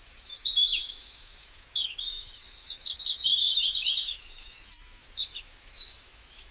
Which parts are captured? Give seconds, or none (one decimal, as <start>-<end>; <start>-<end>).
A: none